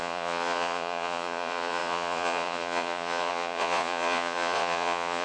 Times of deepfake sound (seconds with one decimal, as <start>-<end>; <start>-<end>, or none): 0.0-5.2

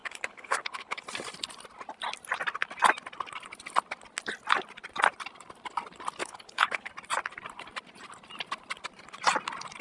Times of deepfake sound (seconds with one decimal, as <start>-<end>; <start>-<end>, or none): 0.0-1.0; 6.2-6.9

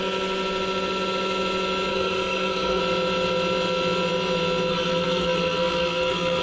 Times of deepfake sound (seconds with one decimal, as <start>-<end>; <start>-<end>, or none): 1.9-2.8; 4.7-6.4

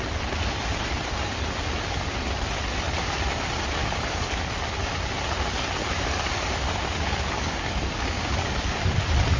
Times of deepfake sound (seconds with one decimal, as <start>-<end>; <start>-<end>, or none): 3.8-4.4; 5.8-8.9

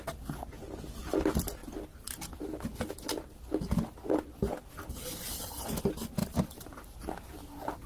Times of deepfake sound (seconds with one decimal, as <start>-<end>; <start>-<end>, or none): 6.2-7.0